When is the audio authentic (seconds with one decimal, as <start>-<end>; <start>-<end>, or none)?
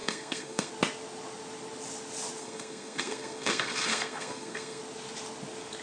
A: 0.7-2.4; 4.8-5.8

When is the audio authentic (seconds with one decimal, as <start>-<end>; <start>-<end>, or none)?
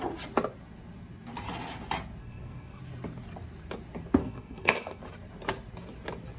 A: 0.0-2.2; 2.8-4.2; 5.0-6.4